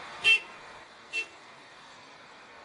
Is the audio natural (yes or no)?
no